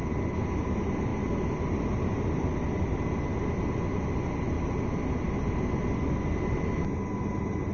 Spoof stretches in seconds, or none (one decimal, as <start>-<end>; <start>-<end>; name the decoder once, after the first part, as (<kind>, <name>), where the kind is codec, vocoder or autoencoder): none